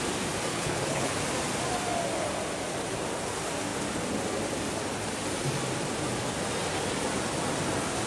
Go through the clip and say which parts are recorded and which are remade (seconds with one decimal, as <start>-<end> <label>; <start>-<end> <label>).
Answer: 0.0-0.5 recorded; 0.5-1.1 remade; 1.1-8.1 recorded